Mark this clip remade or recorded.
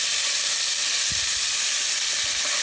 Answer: recorded